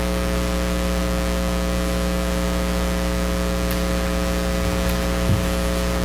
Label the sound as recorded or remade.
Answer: recorded